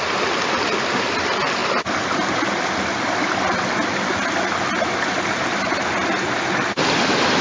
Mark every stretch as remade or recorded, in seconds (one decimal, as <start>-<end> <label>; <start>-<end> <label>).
0.0-7.4 recorded